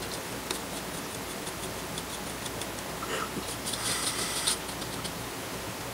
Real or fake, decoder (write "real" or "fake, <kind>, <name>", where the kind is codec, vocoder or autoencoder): real